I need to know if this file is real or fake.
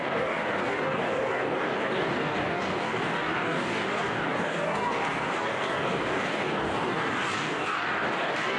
fake